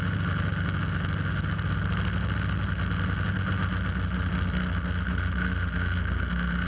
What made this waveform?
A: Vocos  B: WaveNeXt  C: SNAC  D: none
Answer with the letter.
D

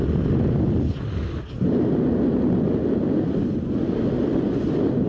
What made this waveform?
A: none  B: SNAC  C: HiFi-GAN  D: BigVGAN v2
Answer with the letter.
A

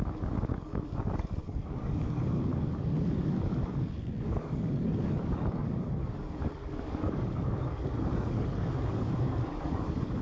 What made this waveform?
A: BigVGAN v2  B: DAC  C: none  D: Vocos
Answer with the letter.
B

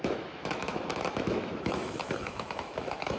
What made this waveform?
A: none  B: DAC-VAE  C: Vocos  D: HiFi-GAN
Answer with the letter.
B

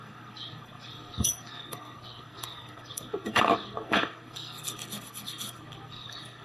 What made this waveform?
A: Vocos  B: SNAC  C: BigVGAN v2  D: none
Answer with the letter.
B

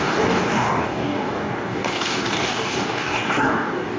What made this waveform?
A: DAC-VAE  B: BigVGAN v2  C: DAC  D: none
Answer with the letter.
C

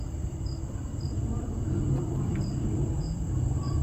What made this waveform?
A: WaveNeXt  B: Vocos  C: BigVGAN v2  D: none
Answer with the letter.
C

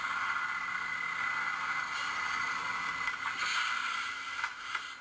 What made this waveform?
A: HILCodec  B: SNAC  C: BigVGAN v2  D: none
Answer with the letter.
D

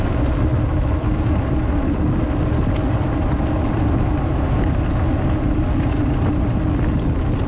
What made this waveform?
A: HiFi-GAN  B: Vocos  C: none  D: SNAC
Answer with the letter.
C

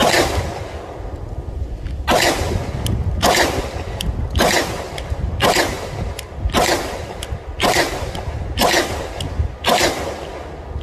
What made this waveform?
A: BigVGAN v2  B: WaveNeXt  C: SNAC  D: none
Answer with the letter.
D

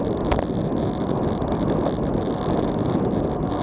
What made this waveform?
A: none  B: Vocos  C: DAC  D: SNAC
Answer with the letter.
A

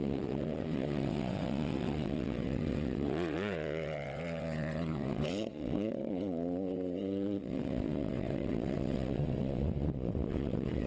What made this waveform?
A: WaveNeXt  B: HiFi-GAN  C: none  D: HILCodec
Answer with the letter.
A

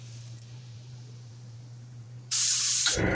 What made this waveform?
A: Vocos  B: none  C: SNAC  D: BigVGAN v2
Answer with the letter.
D